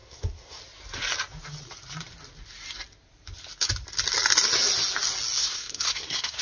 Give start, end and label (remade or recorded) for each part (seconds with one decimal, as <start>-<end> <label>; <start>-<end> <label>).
0.0-0.6 remade; 0.6-5.4 recorded; 5.4-6.4 remade

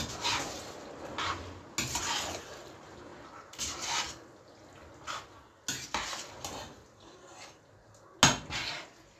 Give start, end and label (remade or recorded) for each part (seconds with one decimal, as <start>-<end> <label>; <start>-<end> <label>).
0.0-9.2 recorded

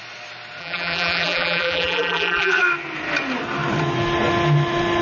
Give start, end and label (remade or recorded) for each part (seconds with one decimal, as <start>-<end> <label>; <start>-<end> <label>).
0.0-0.6 recorded; 0.6-2.6 remade; 2.6-5.0 recorded

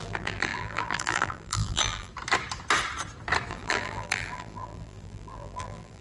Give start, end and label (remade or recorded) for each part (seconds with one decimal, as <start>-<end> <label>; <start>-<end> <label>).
0.0-2.1 remade; 2.1-3.5 recorded; 3.5-6.0 remade

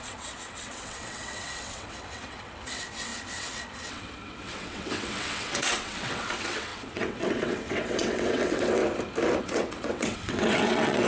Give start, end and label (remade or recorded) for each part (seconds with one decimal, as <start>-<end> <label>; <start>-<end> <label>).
0.0-8.8 remade; 8.8-9.4 recorded; 9.4-11.1 remade

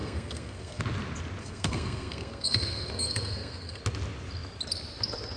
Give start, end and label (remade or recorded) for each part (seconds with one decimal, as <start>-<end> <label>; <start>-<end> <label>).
0.0-0.8 remade; 0.8-1.4 recorded; 1.4-3.8 remade; 3.8-5.4 recorded